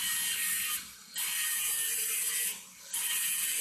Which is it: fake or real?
fake